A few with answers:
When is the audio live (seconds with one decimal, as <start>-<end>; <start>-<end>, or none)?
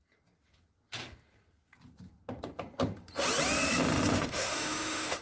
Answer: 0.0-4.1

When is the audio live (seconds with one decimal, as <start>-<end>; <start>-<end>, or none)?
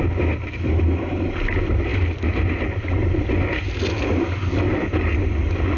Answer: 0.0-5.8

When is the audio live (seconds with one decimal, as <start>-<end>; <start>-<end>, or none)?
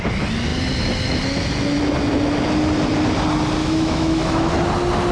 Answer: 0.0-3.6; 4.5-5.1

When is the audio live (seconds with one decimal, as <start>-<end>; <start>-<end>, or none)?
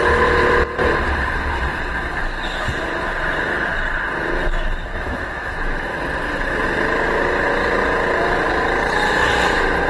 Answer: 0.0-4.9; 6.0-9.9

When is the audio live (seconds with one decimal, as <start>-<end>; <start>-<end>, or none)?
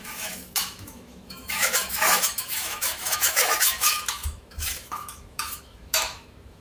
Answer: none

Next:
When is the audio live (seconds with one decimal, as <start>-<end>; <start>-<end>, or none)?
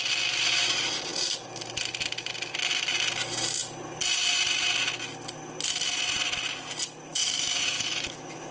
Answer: 0.0-7.1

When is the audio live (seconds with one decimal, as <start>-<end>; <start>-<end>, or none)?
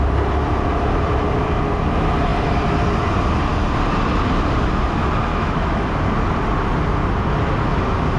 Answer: 0.0-5.3; 5.9-8.2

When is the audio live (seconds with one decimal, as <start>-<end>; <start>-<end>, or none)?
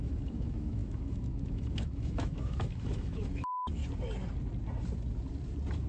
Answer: 3.8-5.9